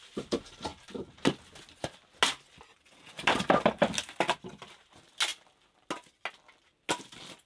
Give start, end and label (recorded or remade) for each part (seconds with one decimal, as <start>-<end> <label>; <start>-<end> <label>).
0.0-7.5 recorded